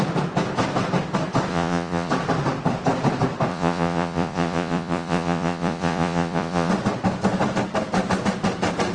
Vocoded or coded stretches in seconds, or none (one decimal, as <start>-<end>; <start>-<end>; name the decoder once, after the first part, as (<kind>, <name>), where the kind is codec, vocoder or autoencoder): 1.5-2.1 (vocoder, Vocos); 3.5-6.7